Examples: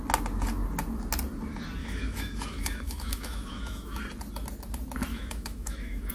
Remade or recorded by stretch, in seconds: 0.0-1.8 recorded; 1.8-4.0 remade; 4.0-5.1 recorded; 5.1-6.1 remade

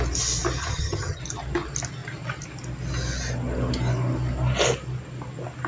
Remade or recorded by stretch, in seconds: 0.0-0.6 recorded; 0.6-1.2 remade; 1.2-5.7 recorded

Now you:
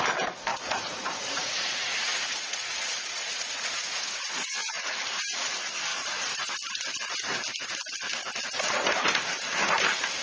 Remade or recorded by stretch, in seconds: 0.0-0.5 recorded; 0.5-5.0 remade; 5.0-5.9 recorded; 5.9-6.5 remade; 6.5-10.2 recorded

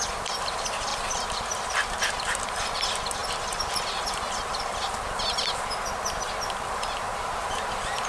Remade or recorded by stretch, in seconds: 0.0-0.9 recorded; 0.9-2.0 remade; 2.0-7.1 recorded; 7.1-8.1 remade

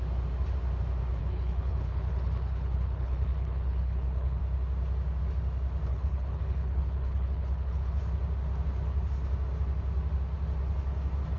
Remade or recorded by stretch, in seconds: 0.0-1.2 recorded; 1.2-4.4 remade; 4.4-5.9 recorded; 5.9-8.0 remade; 8.0-11.4 recorded

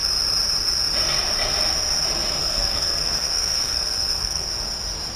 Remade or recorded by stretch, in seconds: 0.0-2.4 recorded; 2.4-4.5 remade; 4.5-5.2 recorded

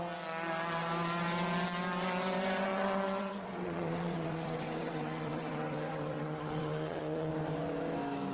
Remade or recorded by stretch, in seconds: 0.0-2.7 recorded; 2.7-7.3 remade; 7.3-8.3 recorded